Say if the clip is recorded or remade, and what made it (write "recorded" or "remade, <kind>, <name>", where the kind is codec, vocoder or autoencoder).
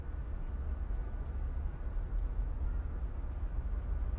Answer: recorded